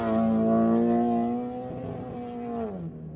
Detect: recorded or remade recorded